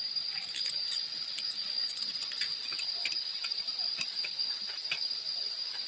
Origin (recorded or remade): recorded